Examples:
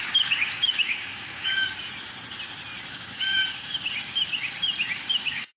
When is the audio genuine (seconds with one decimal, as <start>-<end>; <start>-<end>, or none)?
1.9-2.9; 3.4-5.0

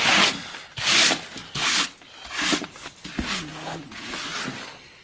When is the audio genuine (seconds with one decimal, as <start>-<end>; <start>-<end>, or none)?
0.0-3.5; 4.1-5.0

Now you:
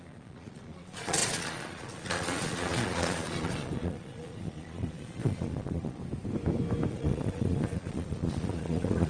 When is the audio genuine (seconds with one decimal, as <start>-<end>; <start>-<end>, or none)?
6.0-6.9